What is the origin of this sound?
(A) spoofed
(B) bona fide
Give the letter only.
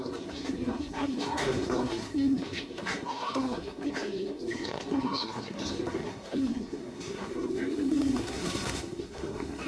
A